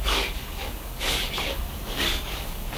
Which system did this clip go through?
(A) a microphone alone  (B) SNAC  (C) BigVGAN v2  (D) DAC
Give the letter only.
D